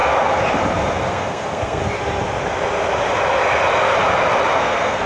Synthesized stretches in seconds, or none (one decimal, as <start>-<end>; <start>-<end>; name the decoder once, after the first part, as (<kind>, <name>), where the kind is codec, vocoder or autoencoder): 1.0-1.8 (codec, SNAC); 4.6-5.1